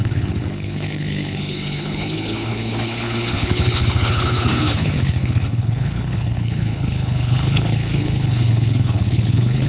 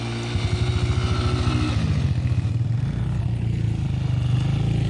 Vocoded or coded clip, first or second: first